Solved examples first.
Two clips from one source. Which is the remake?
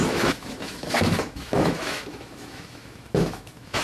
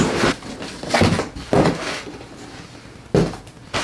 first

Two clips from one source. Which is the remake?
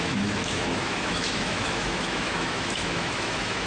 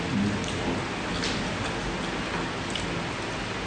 first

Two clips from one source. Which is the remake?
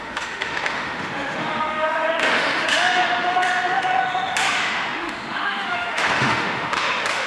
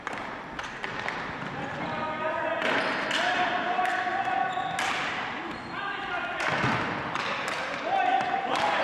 first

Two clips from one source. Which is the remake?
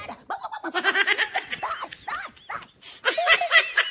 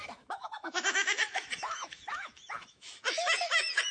second